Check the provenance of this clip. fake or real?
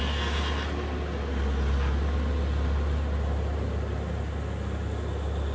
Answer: real